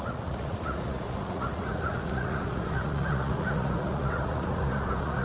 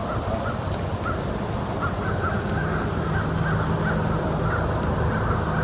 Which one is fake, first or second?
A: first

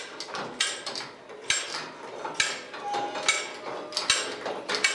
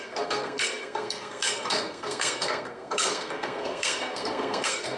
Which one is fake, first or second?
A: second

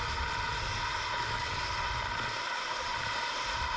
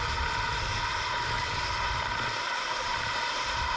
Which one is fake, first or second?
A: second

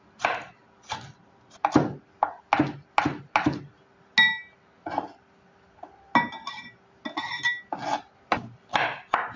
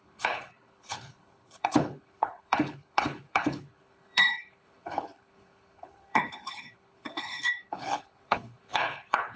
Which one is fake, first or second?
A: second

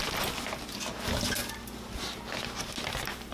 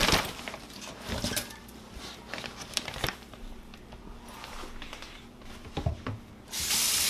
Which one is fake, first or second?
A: second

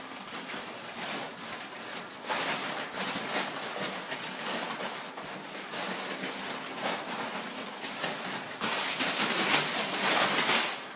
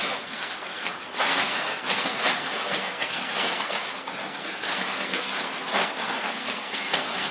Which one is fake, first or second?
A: second